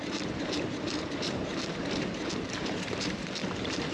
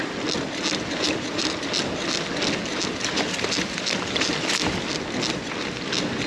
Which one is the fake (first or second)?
first